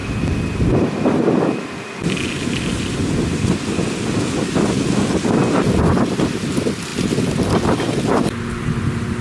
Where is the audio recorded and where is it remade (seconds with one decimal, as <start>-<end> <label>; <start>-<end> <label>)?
0.0-9.2 recorded